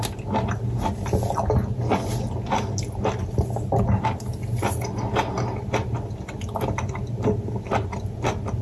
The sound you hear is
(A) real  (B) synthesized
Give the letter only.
A